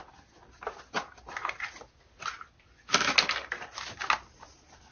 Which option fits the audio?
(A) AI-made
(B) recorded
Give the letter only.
B